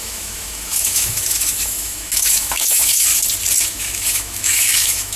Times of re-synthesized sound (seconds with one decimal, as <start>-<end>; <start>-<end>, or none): 0.0-3.1; 3.6-5.2